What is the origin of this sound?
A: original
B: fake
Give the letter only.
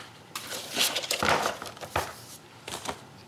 B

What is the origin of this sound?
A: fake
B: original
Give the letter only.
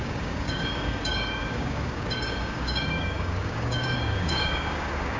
A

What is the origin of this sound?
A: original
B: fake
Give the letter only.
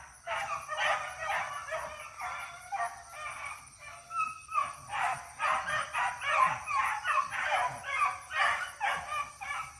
A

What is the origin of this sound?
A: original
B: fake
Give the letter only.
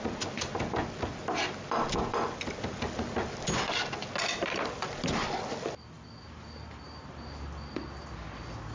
A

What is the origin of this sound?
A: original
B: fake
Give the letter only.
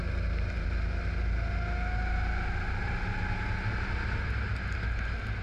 A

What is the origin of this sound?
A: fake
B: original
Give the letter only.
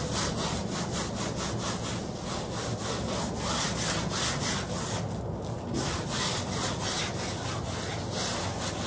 B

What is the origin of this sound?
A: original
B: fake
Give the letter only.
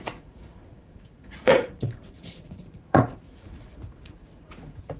B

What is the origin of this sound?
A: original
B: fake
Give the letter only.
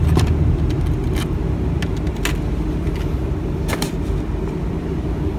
A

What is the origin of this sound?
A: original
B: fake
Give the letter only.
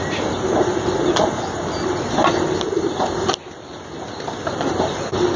A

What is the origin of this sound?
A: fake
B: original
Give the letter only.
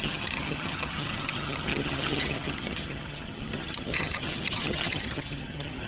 A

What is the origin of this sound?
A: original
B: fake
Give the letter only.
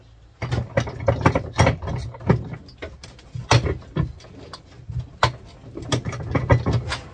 A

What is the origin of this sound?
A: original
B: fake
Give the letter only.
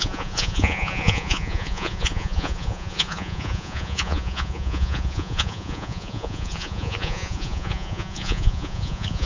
B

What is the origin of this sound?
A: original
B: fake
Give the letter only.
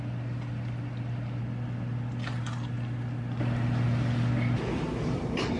A